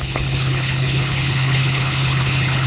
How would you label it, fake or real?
fake